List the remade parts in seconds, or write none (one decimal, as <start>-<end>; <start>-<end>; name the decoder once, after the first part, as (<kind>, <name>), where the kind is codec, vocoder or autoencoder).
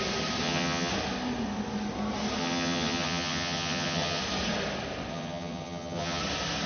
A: 0.4-0.9 (vocoder, HiFi-GAN); 2.4-4.2; 5.1-6.2